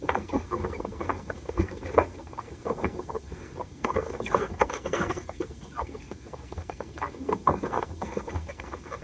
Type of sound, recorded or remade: remade